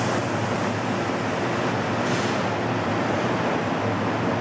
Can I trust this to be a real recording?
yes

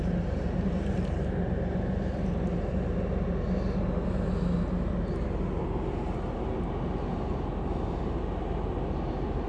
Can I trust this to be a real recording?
yes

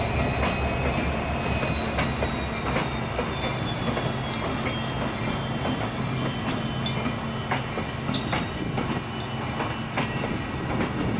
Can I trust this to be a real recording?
yes